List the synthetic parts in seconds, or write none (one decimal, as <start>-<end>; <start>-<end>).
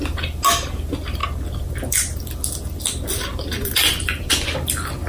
none